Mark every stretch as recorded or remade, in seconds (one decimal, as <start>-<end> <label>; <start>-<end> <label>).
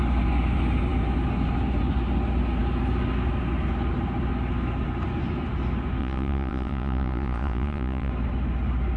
0.0-6.0 recorded; 6.0-8.1 remade; 8.1-9.0 recorded